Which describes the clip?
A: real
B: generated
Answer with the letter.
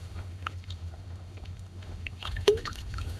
B